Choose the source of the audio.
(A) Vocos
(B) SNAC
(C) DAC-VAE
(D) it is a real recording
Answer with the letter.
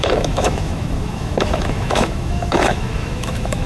C